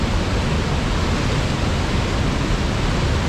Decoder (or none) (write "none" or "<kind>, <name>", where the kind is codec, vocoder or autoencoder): none